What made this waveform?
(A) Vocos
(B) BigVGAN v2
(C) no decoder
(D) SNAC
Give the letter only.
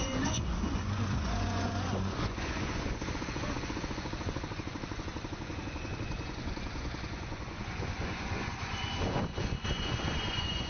A